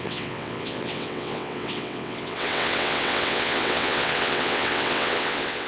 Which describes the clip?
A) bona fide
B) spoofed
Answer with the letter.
B